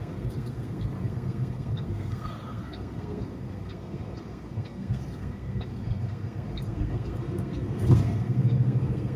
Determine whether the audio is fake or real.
fake